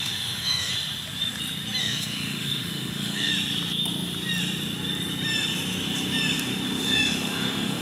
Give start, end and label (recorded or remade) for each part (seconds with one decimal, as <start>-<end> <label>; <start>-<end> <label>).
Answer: 0.0-0.7 remade; 0.7-1.8 recorded; 1.8-3.3 remade; 3.3-6.8 recorded; 6.8-7.8 remade